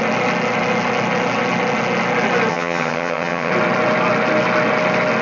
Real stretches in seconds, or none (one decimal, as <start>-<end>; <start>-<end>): 0.0-2.5; 3.5-5.2